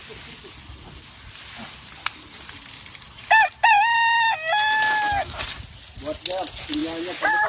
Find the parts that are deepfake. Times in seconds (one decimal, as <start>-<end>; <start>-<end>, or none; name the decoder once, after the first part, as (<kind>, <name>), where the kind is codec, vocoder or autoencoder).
4.5-5.4 (autoencoder, DAC-VAE)